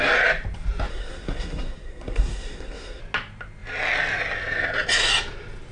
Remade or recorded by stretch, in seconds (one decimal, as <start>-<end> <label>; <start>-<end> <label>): 0.0-0.9 recorded; 0.9-3.0 remade; 3.0-5.7 recorded